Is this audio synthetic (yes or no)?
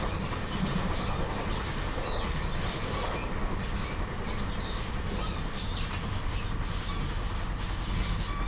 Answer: no